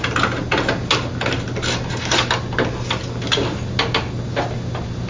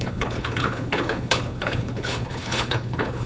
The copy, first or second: second